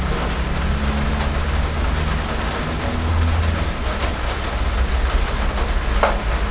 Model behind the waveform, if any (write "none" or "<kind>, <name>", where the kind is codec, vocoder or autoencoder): none